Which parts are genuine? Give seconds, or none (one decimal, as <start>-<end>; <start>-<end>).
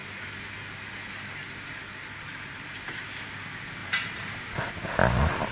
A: 0.0-3.8; 4.7-5.5